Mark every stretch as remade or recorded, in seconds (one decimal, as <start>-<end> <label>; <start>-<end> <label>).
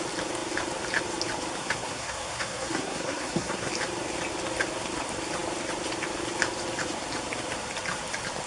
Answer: 0.0-1.6 recorded; 1.6-3.7 remade; 3.7-8.5 recorded